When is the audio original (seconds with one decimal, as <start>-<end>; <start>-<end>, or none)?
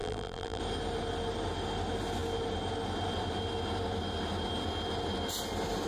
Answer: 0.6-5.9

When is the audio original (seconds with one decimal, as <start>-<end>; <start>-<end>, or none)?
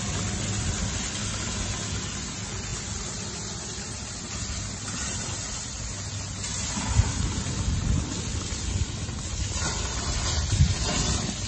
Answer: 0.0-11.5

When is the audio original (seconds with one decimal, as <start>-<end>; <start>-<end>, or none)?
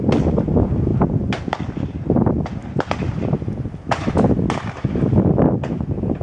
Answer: 0.0-0.9; 1.6-2.6; 4.4-6.2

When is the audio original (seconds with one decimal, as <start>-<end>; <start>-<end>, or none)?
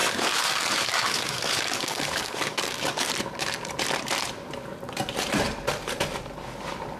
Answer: 3.1-7.0